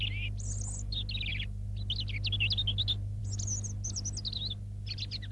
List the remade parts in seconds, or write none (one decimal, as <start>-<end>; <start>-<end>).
none